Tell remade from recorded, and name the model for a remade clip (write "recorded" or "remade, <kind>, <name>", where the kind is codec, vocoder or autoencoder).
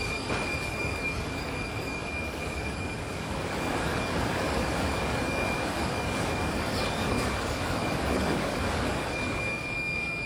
remade, codec, DAC